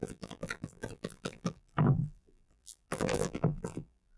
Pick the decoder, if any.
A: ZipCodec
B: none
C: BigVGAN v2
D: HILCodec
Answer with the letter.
C